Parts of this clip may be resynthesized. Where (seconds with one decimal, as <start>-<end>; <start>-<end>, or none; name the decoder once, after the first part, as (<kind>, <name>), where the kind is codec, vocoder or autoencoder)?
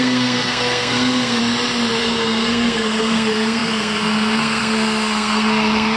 0.0-1.4 (codec, SNAC); 2.0-6.0